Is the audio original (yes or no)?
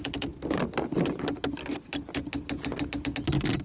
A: yes